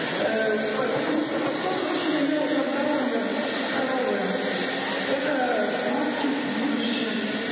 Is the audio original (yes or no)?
yes